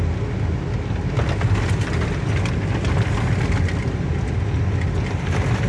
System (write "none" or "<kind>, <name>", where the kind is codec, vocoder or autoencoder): none